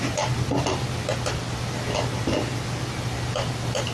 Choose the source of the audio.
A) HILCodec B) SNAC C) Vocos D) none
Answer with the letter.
D